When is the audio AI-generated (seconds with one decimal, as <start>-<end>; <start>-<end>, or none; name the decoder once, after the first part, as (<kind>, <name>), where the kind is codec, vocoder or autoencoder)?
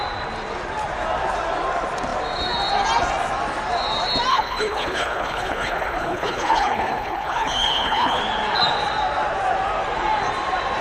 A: 4.3-8.2 (codec, HILCodec)